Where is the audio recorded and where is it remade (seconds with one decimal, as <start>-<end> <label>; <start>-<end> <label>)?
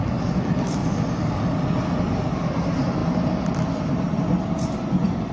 0.0-5.3 recorded